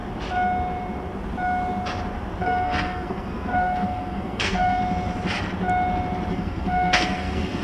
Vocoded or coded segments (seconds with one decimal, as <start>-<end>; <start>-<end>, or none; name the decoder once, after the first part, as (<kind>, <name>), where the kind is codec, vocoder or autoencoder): 2.4-4.8 (codec, SNAC); 6.3-7.6